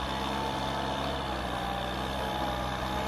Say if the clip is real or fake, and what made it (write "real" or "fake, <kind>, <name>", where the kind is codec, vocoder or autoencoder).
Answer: real